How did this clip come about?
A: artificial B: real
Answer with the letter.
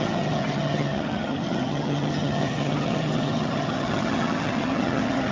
A